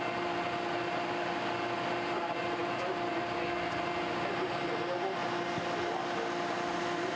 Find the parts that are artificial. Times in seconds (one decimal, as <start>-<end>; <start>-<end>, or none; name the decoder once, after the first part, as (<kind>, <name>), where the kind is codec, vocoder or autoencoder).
none